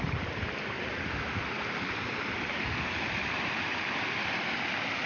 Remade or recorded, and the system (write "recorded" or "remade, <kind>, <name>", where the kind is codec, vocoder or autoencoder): recorded